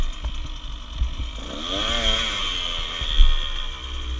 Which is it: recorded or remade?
recorded